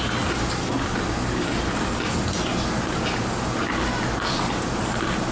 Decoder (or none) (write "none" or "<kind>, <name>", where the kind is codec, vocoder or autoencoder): none